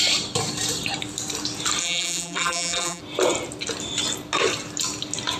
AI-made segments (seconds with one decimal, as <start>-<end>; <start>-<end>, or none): 1.8-3.0